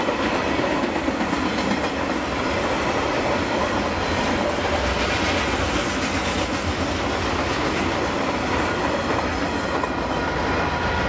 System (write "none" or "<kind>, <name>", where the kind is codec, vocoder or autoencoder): none